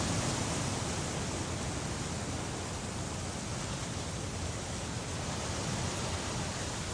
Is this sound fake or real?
real